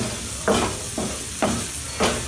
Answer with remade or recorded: recorded